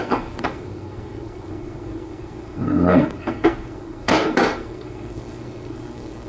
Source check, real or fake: fake